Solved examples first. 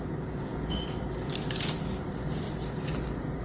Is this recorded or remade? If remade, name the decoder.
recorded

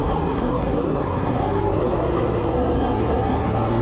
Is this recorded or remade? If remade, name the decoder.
remade, codec, SNAC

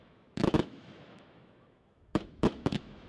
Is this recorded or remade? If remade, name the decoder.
remade, autoencoder, DAC-VAE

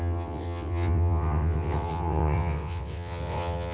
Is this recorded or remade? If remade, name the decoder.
remade, vocoder, WaveNeXt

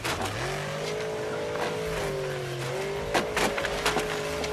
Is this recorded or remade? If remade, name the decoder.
recorded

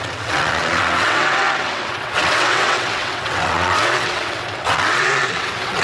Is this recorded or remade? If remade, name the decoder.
remade, vocoder, WaveNeXt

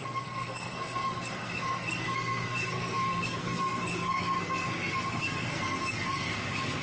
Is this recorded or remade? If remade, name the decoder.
remade, codec, SNAC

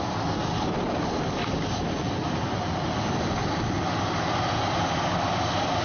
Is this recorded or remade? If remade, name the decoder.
recorded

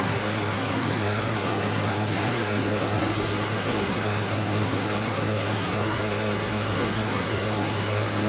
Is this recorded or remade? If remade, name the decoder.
remade, codec, SNAC